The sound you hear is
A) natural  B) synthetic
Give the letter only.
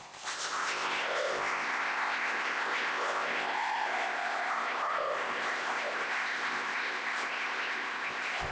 B